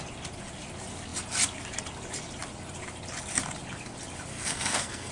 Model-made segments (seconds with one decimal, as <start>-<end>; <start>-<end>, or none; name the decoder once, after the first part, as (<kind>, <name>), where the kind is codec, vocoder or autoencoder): 4.3-5.1 (codec, SNAC)